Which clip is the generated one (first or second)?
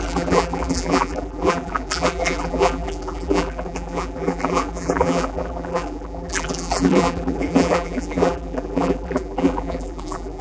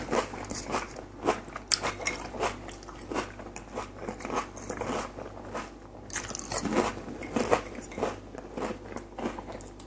first